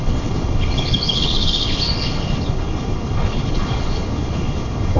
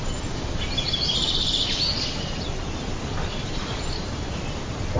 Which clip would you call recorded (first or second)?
second